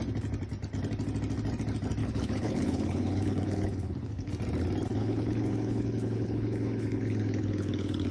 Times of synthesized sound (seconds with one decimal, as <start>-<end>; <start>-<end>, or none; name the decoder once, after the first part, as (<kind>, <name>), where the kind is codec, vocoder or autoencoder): 2.0-4.3 (codec, HILCodec); 5.0-8.1